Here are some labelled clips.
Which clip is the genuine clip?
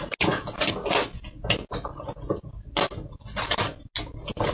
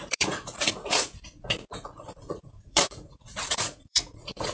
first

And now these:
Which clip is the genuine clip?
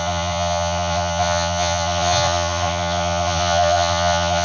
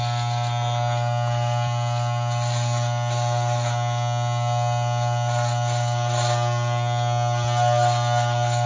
second